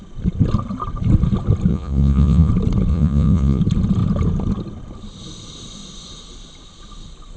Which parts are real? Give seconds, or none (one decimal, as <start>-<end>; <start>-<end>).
0.0-1.7; 2.5-2.9; 3.6-7.4